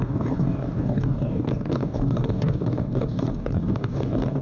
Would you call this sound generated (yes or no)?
yes